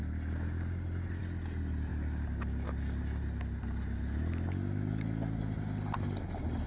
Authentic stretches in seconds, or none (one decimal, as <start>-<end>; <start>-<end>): 1.2-6.7